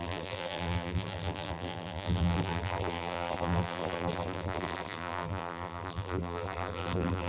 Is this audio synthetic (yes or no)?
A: yes